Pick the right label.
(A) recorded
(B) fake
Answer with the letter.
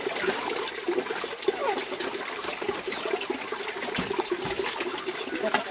A